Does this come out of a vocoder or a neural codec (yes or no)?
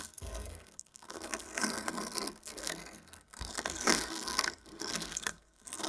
yes